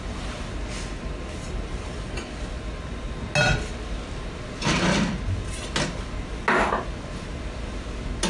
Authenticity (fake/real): real